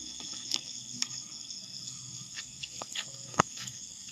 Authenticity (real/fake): fake